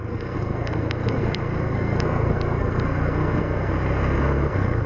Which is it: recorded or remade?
remade